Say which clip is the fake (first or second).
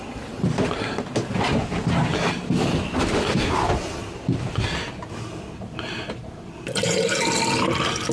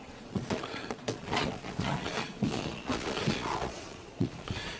second